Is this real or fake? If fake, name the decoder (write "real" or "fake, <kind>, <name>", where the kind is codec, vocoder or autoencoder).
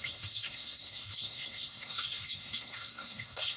fake, codec, SNAC